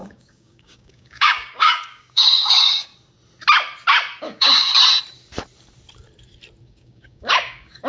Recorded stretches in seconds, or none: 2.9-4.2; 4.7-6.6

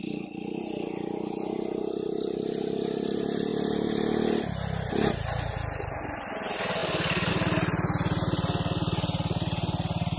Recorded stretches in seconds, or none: 0.0-10.2

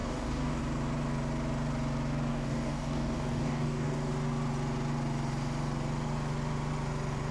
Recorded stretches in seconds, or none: 0.6-2.3; 4.1-7.3

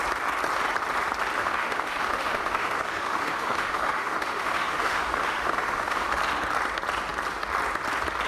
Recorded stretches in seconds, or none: 0.0-1.4; 6.2-8.3

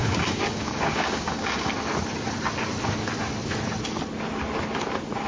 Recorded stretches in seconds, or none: 1.7-5.3

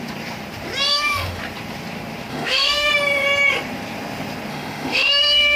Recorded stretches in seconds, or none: 0.0-0.9; 1.4-2.3; 2.9-4.5

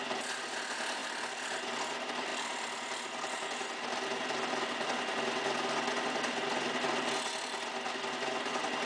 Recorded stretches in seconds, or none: 0.0-8.9

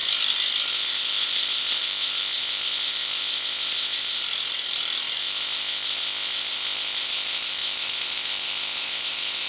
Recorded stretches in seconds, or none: 0.0-0.7; 4.2-5.2